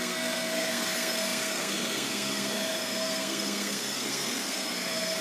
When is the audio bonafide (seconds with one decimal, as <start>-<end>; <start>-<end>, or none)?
none